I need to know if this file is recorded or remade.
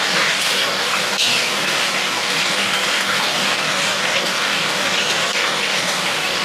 remade